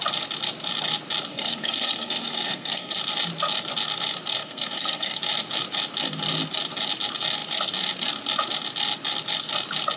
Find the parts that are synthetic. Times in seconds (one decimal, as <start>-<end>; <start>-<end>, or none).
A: 1.3-3.0; 4.4-5.2